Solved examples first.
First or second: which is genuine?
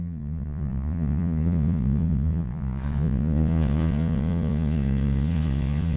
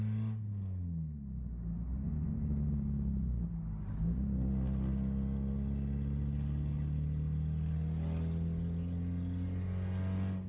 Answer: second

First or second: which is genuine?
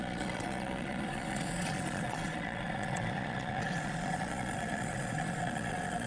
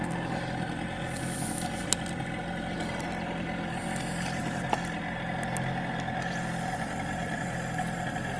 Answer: second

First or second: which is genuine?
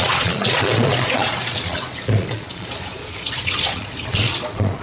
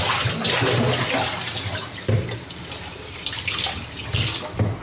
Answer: second